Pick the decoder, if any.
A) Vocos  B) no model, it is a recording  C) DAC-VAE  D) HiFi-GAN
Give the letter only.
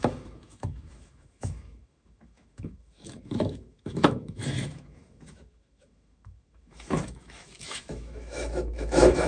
C